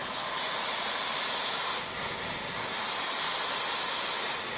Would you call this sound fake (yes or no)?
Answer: no